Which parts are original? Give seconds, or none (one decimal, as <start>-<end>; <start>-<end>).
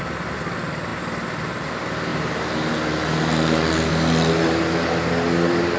0.0-5.8